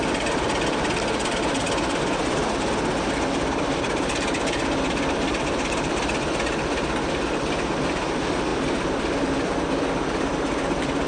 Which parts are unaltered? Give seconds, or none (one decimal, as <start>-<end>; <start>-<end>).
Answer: 0.0-11.1